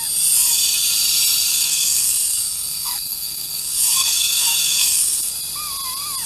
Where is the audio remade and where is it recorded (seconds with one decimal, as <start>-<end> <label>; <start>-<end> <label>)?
0.0-1.5 recorded; 1.5-5.3 remade; 5.3-6.3 recorded